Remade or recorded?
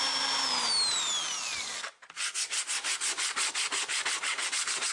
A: recorded